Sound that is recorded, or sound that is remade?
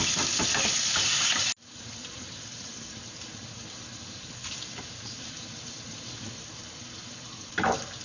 recorded